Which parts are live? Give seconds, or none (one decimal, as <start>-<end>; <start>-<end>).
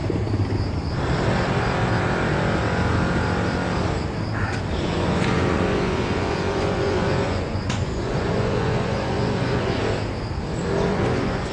0.0-4.8; 9.8-10.9